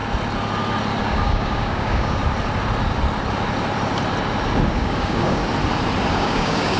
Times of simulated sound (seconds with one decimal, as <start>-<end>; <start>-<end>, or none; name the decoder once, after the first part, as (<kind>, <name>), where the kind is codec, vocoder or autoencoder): 1.0-2.2 (codec, DAC); 4.7-5.4; 6.1-6.8

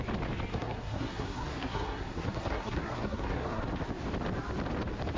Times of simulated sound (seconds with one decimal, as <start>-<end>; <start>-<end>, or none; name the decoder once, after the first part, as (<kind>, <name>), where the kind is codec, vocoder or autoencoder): 0.5-3.6 (codec, SNAC)

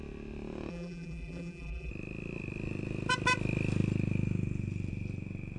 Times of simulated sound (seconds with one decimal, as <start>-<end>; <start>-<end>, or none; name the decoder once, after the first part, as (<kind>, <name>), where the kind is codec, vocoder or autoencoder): 0.7-1.9 (vocoder, BigVGAN v2)

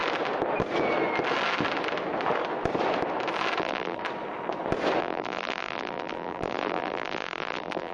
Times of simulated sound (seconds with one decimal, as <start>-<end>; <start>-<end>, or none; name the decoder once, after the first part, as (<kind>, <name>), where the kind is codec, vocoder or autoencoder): 3.6-4.0 (vocoder, BigVGAN v2); 5.0-7.9

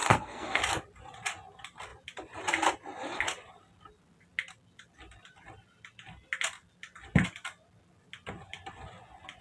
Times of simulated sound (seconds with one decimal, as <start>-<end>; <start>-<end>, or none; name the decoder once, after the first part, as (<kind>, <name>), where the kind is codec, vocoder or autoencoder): 0.0-0.6 (codec, SNAC)

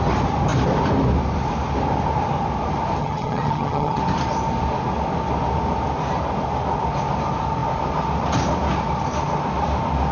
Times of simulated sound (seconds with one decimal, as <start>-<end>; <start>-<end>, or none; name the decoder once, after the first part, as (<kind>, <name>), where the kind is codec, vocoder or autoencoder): 3.0-4.0 (vocoder, HiFi-GAN)